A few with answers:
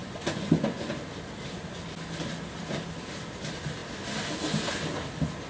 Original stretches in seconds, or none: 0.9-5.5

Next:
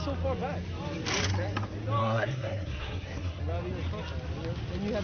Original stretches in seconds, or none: 0.0-2.0; 3.4-5.0

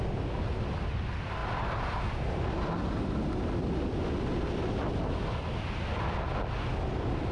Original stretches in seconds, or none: 0.0-7.3